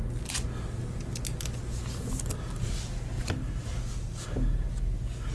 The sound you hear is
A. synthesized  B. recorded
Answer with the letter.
B